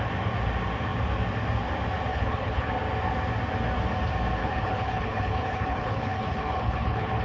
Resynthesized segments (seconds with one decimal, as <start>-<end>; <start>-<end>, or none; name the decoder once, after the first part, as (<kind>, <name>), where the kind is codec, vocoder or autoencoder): 2.1-2.7 (codec, HILCodec); 4.4-7.2